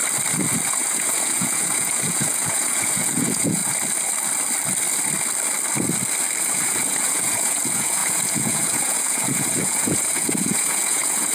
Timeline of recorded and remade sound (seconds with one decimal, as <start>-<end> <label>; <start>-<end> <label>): 0.0-0.7 recorded; 0.7-3.6 remade; 3.6-6.4 recorded; 6.4-11.3 remade